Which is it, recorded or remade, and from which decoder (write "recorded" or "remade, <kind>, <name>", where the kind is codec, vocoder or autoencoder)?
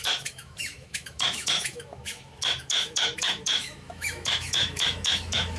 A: remade, autoencoder, DAC-VAE